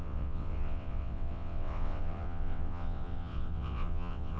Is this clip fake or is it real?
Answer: fake